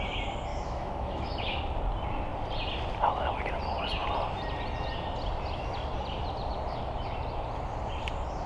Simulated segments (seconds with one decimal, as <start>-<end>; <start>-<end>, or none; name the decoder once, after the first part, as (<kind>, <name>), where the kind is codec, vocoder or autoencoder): 0.5-1.6 (autoencoder, DAC-VAE)